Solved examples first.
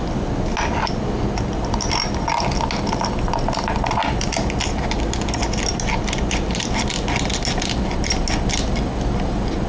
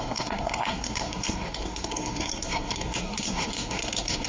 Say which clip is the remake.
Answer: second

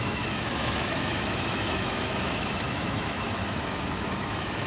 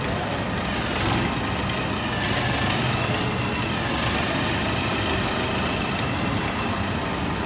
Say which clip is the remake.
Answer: first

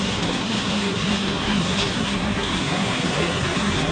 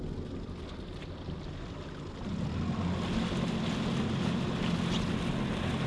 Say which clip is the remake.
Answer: first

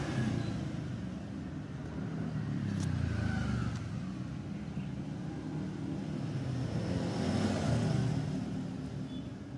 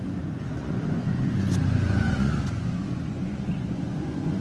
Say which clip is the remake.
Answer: second